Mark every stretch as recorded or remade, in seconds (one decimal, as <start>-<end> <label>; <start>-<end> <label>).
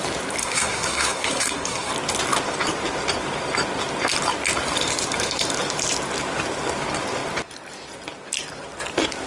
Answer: 0.0-0.4 recorded; 0.4-1.9 remade; 1.9-9.3 recorded